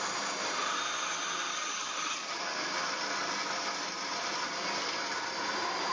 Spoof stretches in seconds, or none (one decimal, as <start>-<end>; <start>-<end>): 1.5-2.4